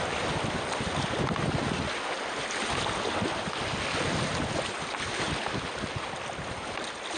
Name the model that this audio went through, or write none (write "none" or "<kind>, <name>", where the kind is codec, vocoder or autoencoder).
none